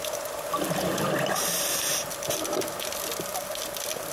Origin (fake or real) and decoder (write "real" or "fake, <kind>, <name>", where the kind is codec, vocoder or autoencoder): real